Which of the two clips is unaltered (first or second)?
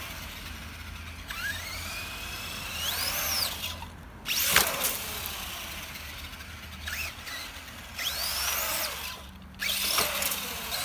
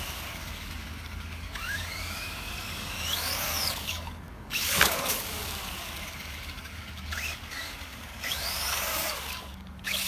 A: first